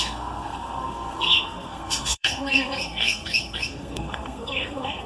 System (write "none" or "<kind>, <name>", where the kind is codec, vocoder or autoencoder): codec, SNAC